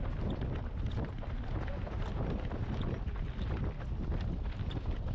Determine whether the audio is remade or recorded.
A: recorded